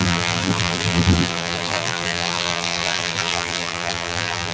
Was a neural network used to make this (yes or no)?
yes